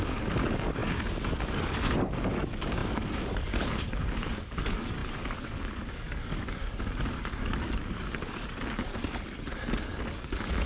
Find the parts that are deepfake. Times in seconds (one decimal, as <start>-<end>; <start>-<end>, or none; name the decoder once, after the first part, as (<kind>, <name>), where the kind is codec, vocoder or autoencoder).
0.0-8.9 (codec, DAC); 10.1-10.7